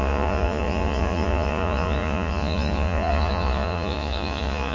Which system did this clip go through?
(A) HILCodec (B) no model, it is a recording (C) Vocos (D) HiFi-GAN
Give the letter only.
C